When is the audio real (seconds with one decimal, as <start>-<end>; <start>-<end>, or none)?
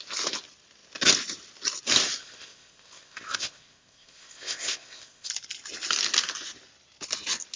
0.0-2.2; 5.3-7.6